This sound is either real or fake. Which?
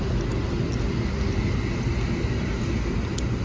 real